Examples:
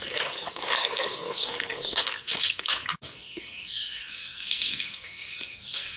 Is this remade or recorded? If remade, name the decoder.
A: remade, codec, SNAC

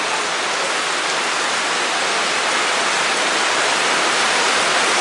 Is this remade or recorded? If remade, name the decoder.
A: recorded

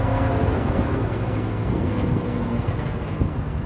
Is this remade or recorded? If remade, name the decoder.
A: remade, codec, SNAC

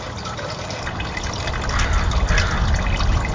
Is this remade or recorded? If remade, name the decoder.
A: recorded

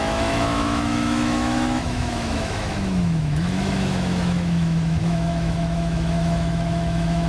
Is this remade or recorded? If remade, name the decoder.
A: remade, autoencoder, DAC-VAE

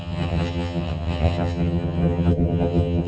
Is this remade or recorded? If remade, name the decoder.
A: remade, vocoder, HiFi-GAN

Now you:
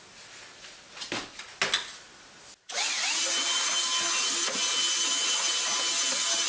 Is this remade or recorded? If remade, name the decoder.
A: recorded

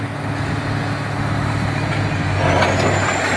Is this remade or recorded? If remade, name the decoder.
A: recorded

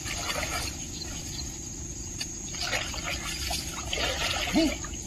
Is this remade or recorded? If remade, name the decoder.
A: recorded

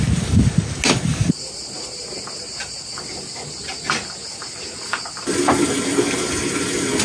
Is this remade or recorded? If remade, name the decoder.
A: recorded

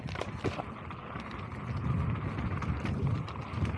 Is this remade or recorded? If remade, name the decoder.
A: recorded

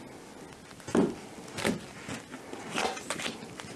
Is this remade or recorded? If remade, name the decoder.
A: recorded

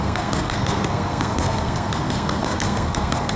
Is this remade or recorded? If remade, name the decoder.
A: remade, codec, SNAC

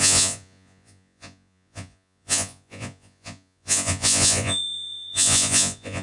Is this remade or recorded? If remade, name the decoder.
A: remade, vocoder, Vocos